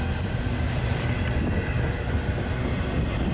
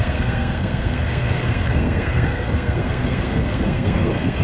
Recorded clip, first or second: first